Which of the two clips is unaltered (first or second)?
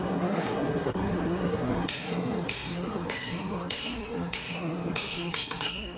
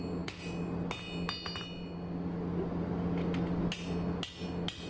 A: second